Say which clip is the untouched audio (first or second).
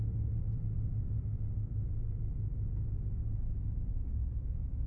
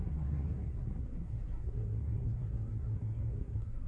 first